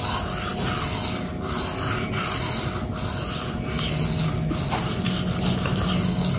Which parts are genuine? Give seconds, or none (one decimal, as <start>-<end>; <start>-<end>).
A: 0.0-6.4

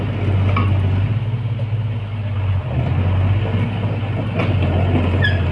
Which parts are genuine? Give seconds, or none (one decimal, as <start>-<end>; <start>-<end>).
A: 0.0-5.5

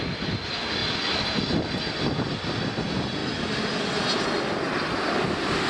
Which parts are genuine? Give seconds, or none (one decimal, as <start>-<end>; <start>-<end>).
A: 0.0-5.7

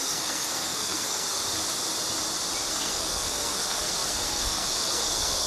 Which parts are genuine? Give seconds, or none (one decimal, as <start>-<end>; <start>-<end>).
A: 1.4-2.7